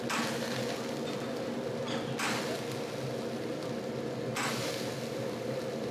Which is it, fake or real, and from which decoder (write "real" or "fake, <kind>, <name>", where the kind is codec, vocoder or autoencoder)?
real